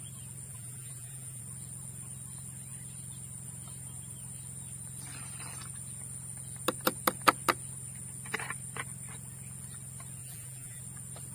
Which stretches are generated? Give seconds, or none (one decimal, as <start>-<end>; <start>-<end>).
0.5-1.4; 10.2-10.8